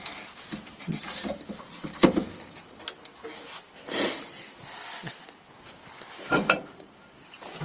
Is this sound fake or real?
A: real